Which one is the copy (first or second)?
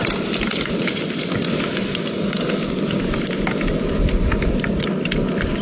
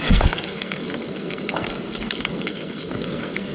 second